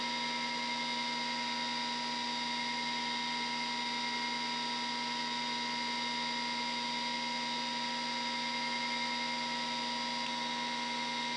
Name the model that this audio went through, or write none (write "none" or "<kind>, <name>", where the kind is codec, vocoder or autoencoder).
none